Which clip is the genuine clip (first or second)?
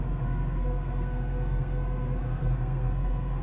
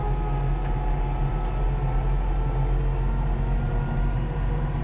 second